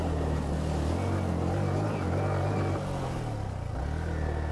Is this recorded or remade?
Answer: recorded